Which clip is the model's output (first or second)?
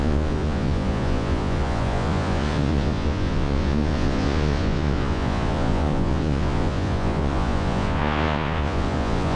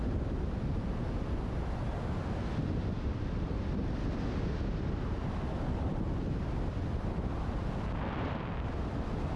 first